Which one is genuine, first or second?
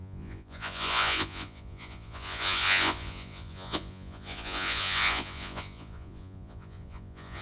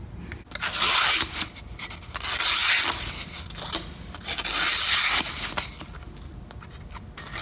second